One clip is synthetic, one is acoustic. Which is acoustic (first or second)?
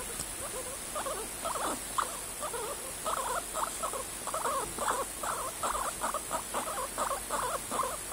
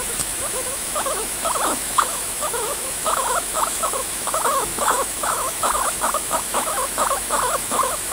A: first